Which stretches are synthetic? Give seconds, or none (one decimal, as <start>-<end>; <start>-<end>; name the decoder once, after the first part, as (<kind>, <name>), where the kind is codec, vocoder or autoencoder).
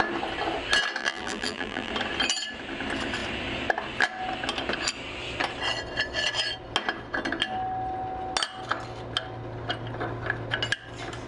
1.0-1.9 (vocoder, BigVGAN v2)